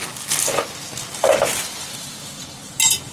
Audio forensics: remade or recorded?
recorded